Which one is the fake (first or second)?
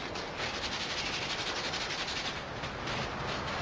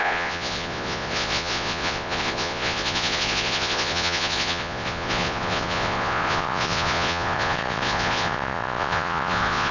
second